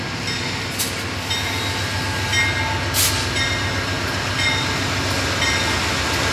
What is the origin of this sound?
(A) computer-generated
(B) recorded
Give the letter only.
B